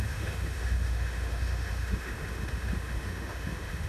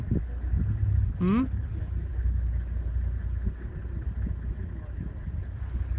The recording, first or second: second